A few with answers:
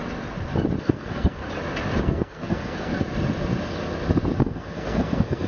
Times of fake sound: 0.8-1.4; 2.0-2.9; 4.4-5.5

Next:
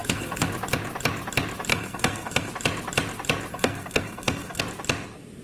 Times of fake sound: 0.0-0.5; 1.7-2.5; 3.5-4.6

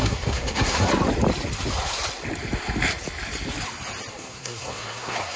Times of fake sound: 0.0-0.9; 4.1-5.4

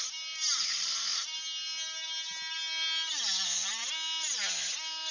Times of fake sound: none

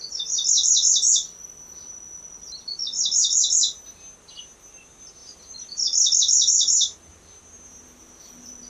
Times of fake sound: none

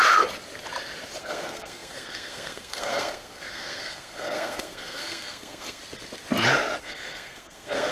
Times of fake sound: 1.2-5.8; 6.8-7.9